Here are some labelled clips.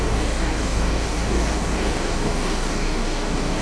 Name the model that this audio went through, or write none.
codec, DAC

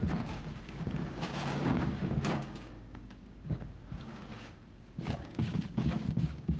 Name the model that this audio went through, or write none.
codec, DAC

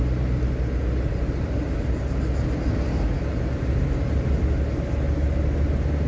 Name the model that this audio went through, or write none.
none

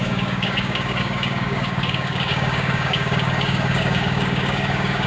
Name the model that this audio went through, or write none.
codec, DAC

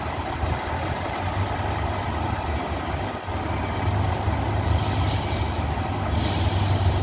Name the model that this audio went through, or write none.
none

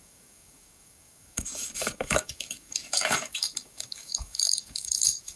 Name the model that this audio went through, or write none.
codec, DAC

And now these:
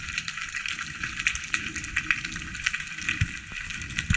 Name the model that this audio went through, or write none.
none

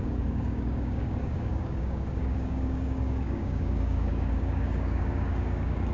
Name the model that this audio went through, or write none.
codec, DAC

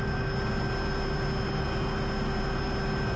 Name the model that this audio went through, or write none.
none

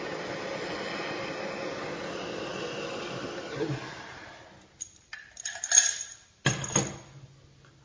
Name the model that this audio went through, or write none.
none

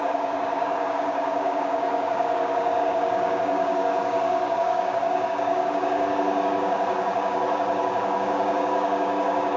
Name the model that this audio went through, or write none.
codec, DAC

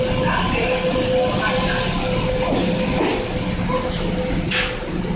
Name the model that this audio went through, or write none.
none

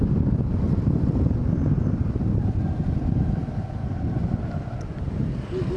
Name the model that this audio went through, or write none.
none